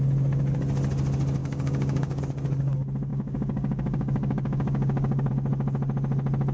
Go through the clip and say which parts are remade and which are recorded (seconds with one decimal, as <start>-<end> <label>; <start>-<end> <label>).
0.0-1.4 recorded; 1.4-2.2 remade; 2.2-3.1 recorded; 3.1-5.3 remade; 5.3-6.5 recorded